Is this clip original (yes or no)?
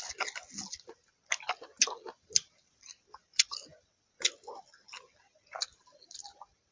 yes